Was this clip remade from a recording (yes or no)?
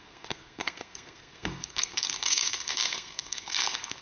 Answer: yes